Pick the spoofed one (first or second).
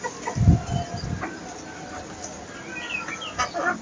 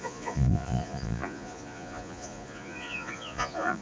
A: second